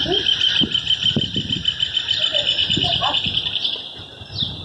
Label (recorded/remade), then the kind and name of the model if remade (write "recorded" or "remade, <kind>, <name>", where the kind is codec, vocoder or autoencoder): recorded